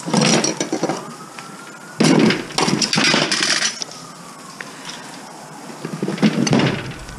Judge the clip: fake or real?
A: real